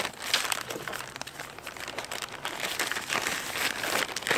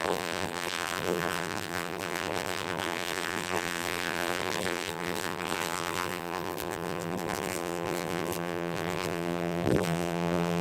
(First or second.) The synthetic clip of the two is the second